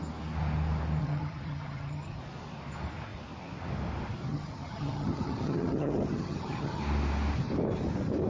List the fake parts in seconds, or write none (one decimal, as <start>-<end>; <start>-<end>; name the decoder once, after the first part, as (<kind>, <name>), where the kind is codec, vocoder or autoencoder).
1.0-2.2 (vocoder, HiFi-GAN); 4.3-6.8